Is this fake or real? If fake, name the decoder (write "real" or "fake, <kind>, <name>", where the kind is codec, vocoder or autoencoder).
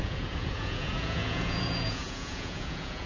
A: fake, vocoder, Vocos